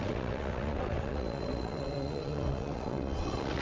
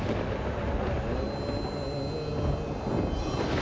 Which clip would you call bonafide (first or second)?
second